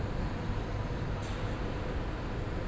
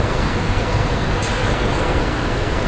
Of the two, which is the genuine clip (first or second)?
first